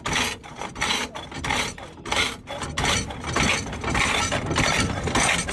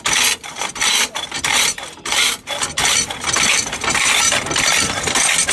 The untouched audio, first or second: first